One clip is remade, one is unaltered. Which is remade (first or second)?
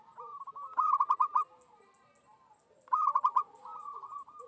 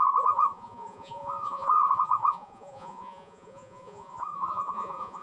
second